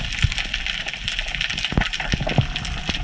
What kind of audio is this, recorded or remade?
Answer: recorded